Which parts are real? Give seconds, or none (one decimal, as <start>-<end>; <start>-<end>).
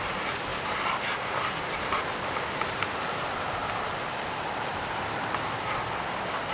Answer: 0.0-0.5; 2.9-3.6; 6.0-6.5